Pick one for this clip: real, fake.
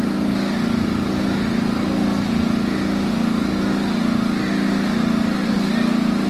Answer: real